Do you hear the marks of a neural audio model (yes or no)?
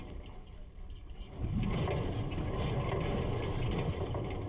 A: no